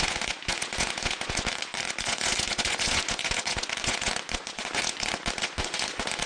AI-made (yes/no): yes